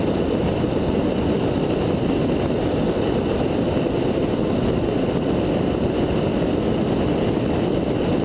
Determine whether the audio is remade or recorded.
recorded